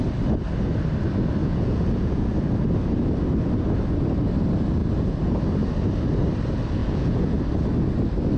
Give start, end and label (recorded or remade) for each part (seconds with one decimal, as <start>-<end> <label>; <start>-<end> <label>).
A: 0.0-1.4 recorded; 1.4-2.3 remade; 2.3-6.8 recorded; 6.8-7.4 remade; 7.4-8.4 recorded